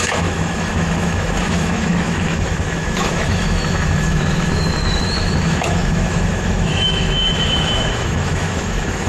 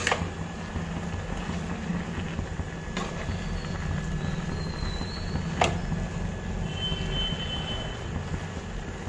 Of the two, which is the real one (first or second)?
second